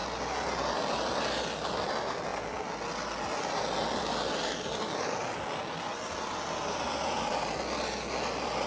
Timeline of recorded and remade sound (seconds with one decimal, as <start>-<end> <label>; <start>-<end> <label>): 0.0-8.7 recorded